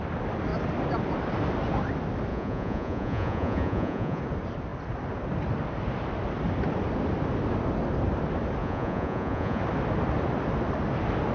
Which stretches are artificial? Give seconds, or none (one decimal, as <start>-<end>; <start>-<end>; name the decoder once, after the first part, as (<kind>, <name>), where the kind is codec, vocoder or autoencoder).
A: 2.3-4.2 (vocoder, Vocos); 8.6-9.6